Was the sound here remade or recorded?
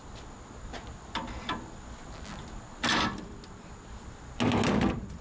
recorded